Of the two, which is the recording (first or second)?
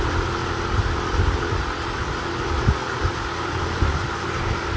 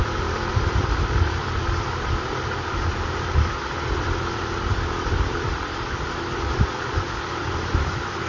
first